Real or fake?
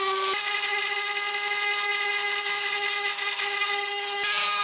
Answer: real